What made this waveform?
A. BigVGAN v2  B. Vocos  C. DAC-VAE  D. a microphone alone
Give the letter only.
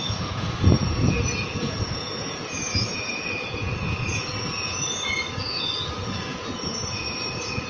B